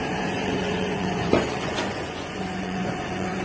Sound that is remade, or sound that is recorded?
remade